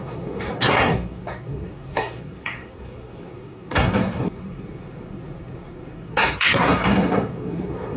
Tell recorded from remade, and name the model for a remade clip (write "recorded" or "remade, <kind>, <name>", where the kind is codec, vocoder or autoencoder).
remade, codec, SNAC